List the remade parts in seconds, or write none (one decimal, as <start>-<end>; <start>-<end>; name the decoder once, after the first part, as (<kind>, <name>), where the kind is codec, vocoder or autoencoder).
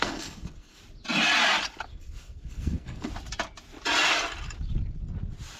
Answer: 0.0-0.8 (codec, SNAC); 1.9-3.1